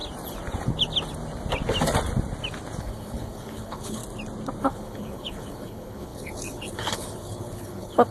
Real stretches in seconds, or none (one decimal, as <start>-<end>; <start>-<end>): 0.0-2.8; 4.0-4.6